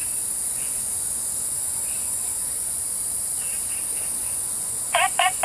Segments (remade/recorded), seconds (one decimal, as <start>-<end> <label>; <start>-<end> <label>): 0.0-0.5 recorded; 0.5-2.8 remade; 2.8-4.2 recorded; 4.2-5.4 remade